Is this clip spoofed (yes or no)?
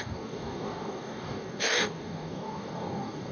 yes